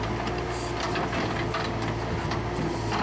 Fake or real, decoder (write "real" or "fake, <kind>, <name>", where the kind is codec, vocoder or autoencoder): real